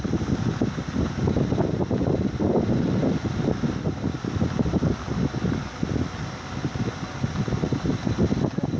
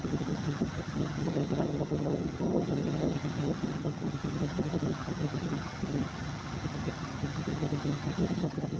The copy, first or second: second